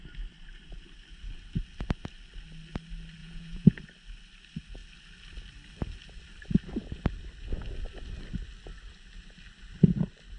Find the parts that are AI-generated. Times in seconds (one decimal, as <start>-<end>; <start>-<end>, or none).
3.2-3.8